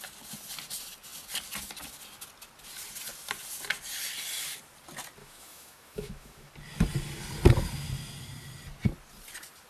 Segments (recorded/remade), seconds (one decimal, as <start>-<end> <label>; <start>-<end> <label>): 0.0-5.2 recorded; 5.2-6.5 remade; 6.5-9.7 recorded